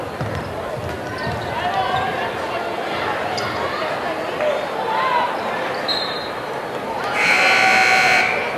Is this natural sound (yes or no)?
yes